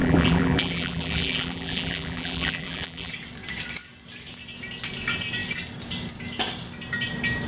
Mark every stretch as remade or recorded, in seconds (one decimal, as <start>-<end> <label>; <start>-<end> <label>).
0.0-3.1 remade; 3.1-7.5 recorded

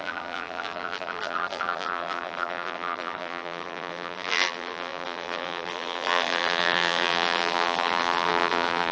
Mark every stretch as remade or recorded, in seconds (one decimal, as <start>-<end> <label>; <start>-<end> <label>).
0.0-8.9 remade

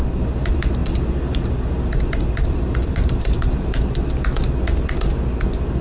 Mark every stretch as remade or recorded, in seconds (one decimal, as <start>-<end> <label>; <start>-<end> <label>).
0.0-0.8 recorded; 0.8-3.9 remade; 3.9-5.8 recorded

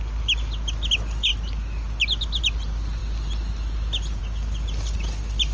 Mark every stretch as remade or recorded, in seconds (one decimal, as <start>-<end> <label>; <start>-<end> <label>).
0.0-5.5 recorded

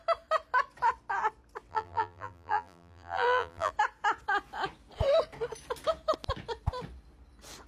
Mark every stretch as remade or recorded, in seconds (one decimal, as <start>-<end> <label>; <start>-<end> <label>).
0.0-1.7 recorded; 1.7-3.7 remade; 3.7-7.7 recorded